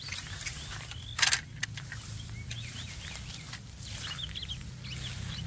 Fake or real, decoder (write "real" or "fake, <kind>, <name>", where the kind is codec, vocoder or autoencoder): real